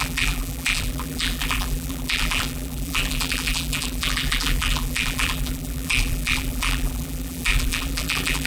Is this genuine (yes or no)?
no